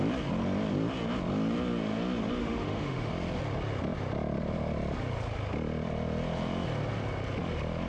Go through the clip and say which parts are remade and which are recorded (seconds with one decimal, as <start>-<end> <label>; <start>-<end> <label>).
0.0-2.4 recorded; 2.4-3.1 remade; 3.1-7.9 recorded